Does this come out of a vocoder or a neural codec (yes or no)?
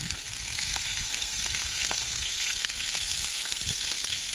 yes